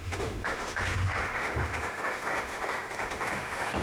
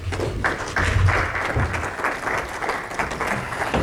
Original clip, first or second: second